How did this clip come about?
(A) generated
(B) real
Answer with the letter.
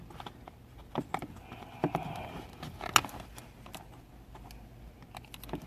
B